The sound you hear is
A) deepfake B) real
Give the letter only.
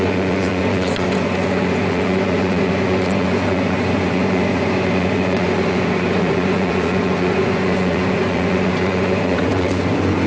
A